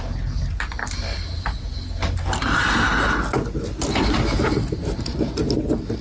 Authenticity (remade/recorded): recorded